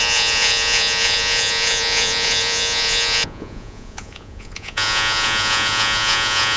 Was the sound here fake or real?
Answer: fake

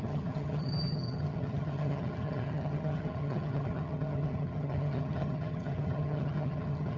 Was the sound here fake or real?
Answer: fake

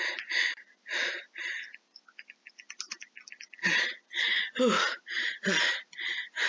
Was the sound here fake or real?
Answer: real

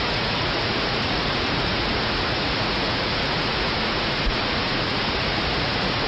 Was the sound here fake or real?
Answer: fake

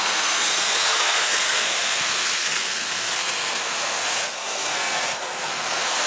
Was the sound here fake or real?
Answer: fake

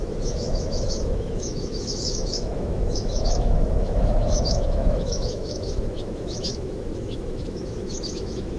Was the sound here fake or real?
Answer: fake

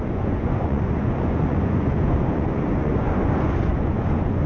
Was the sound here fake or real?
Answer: fake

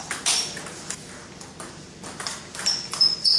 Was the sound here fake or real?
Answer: real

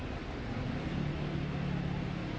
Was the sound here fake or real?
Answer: real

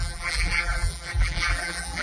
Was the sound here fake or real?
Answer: fake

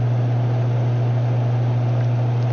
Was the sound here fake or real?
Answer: real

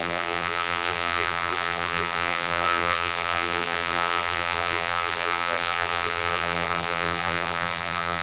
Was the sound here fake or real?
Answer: fake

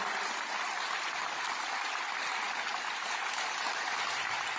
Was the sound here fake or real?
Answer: real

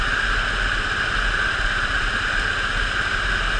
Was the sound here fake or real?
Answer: real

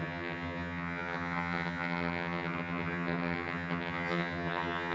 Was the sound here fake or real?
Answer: fake